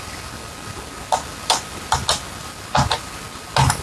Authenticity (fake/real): real